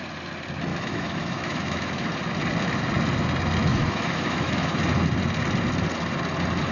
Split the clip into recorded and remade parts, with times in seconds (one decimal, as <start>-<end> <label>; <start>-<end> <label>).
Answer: 0.0-0.7 recorded; 0.7-2.1 remade; 2.1-3.7 recorded; 3.7-4.8 remade; 4.8-6.7 recorded